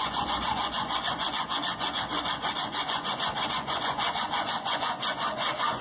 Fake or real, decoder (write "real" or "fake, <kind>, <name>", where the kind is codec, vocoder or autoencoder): fake, vocoder, Vocos